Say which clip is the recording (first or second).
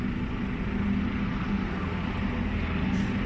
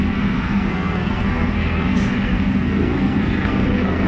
first